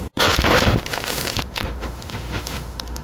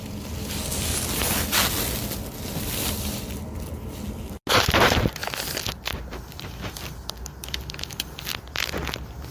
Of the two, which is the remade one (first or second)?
first